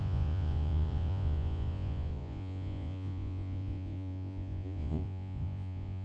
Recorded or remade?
remade